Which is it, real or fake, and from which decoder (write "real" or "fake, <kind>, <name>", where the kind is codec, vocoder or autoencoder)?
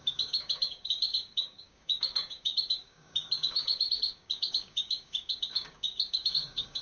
fake, codec, DAC